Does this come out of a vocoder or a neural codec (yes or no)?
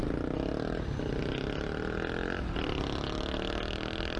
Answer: no